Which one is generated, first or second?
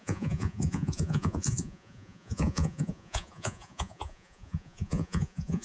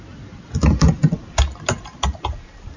first